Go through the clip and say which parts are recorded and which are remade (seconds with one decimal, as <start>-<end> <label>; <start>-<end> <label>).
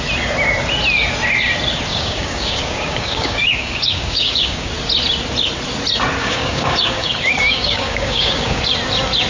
0.0-1.9 recorded; 1.9-4.7 remade; 4.7-6.2 recorded; 6.2-8.6 remade; 8.6-9.3 recorded